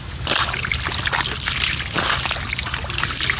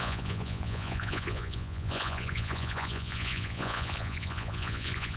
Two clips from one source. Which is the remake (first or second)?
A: second